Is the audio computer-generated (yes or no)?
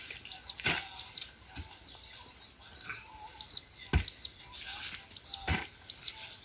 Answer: no